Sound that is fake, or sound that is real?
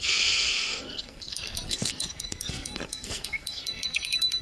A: fake